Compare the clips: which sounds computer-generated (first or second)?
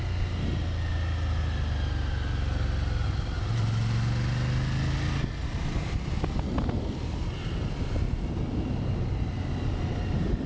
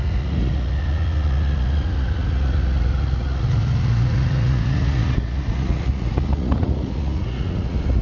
second